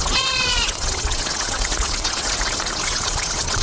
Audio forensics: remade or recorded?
remade